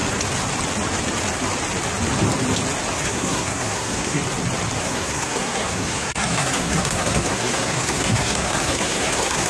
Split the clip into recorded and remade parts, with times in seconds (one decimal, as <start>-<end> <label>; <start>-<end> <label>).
0.0-2.9 recorded; 2.9-4.2 remade; 4.2-4.8 recorded; 4.8-9.5 remade